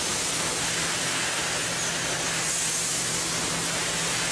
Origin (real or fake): real